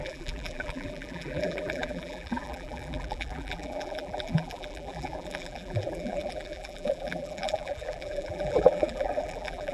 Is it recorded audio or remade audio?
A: remade